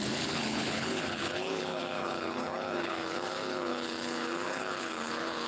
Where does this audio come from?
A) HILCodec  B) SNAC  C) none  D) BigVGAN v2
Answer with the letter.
A